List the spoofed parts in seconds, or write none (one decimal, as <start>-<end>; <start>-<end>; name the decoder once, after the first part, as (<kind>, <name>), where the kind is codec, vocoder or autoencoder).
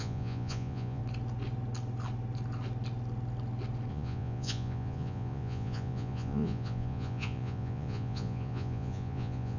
0.0-1.0 (vocoder, Vocos); 3.9-9.6